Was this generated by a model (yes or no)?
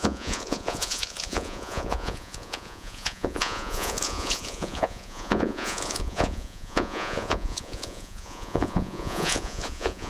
yes